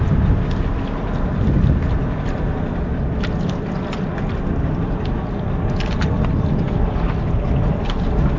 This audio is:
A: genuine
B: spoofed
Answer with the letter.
A